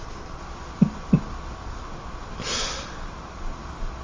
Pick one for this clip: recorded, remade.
recorded